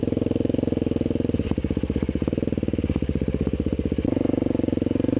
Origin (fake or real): real